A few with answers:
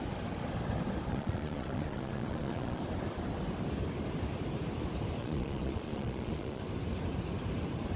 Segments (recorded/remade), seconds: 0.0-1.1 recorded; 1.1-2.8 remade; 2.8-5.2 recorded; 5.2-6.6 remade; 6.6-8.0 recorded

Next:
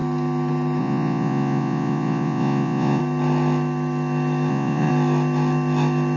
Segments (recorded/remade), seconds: 0.0-0.8 recorded; 0.8-3.0 remade; 3.0-4.5 recorded; 4.5-4.9 remade; 4.9-6.2 recorded

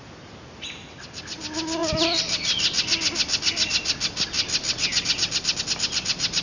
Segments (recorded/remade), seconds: 0.0-6.4 recorded

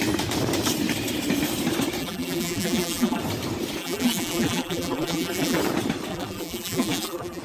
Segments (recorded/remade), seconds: 0.0-2.0 recorded; 2.0-3.2 remade; 3.2-3.8 recorded; 3.8-5.6 remade; 5.6-6.1 recorded; 6.1-7.4 remade

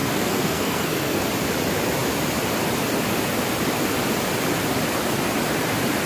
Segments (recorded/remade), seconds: 0.0-1.2 remade; 1.2-6.1 recorded

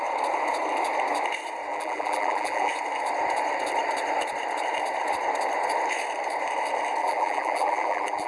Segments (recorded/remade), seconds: 0.0-1.7 recorded; 1.7-2.7 remade; 2.7-7.0 recorded; 7.0-8.3 remade

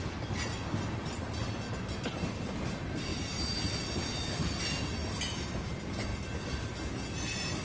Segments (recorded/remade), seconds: 0.0-7.6 recorded